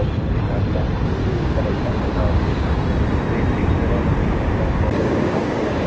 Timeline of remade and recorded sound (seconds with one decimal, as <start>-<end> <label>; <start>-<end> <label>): 0.0-1.2 recorded; 1.2-2.8 remade; 2.8-4.2 recorded; 4.2-5.9 remade